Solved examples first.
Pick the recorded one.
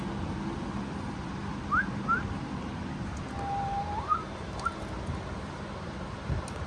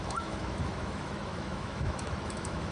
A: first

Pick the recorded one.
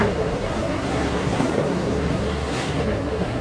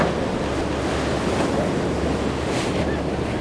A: second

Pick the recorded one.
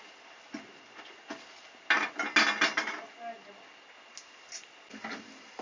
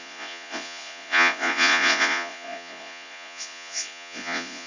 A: first